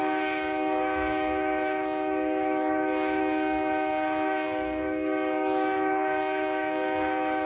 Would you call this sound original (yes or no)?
no